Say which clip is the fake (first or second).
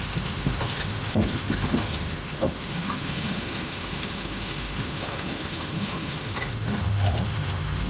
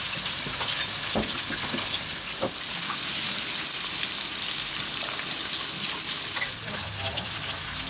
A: first